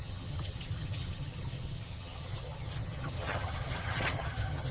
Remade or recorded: remade